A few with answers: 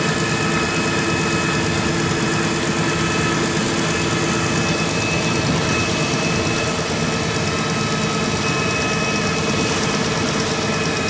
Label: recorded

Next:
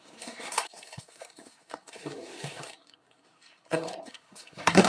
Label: remade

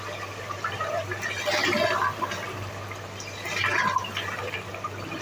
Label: recorded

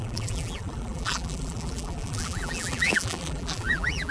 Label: remade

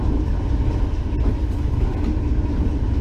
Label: recorded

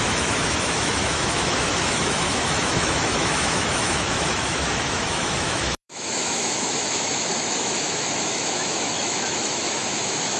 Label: remade